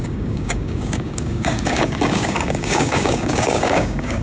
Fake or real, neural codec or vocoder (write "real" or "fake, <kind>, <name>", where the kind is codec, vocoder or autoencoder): fake, codec, DAC